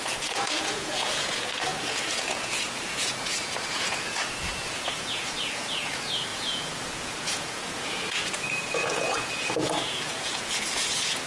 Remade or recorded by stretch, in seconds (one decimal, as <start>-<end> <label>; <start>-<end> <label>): 0.0-11.3 remade